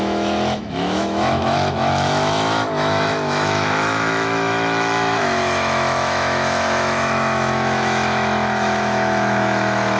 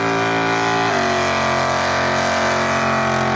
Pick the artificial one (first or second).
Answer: first